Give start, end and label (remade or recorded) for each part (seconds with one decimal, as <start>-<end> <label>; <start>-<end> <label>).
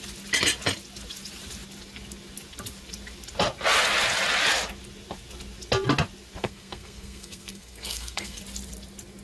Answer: 0.0-6.4 recorded; 6.4-8.4 remade; 8.4-9.2 recorded